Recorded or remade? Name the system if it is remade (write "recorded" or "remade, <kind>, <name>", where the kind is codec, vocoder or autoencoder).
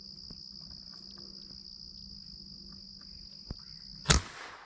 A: recorded